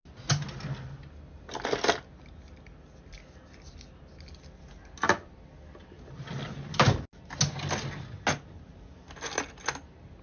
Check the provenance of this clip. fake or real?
real